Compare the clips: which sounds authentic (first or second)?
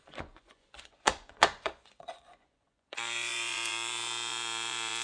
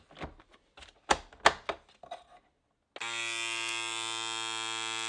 second